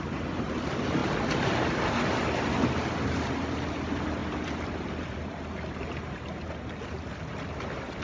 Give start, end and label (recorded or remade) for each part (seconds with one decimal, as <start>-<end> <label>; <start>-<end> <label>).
0.0-8.0 recorded